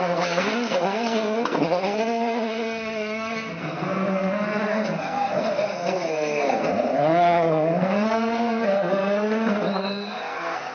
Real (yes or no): no